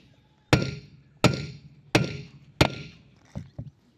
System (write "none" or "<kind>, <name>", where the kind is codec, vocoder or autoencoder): none